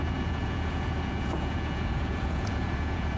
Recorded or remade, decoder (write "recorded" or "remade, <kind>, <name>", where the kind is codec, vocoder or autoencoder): remade, vocoder, Vocos